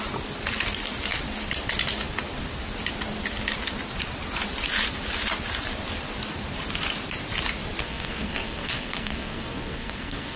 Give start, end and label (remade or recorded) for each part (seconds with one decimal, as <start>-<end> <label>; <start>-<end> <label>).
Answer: 0.0-7.8 recorded; 7.8-10.4 remade